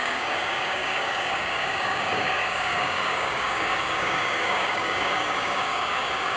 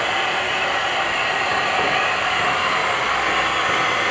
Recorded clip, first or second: second